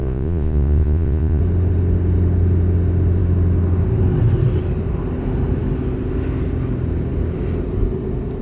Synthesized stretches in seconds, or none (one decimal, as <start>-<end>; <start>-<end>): 0.0-1.4